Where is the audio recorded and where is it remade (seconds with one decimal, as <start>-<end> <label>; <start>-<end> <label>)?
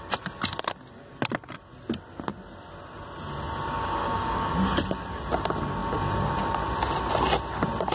0.0-4.0 recorded; 4.0-4.5 remade; 4.5-7.9 recorded